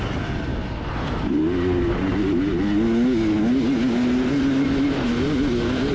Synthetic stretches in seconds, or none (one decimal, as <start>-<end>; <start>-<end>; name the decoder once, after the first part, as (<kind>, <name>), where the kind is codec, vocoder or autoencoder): 0.5-2.5 (vocoder, BigVGAN v2)